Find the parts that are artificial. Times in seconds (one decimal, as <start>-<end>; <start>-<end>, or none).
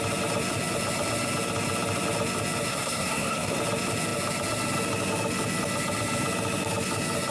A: 2.7-3.6